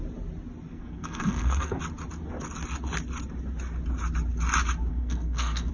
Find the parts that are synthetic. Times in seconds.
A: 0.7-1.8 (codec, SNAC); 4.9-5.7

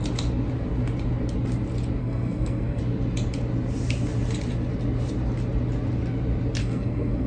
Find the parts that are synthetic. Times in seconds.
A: 2.0-2.8 (codec, SNAC); 6.6-7.3

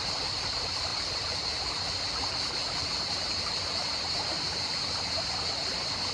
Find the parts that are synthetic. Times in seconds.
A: none

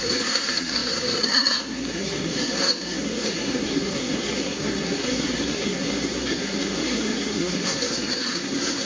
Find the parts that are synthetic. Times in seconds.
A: 0.0-8.8 (codec, SNAC)

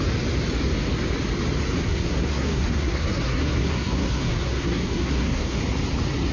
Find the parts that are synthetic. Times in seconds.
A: 1.8-5.6 (codec, SNAC)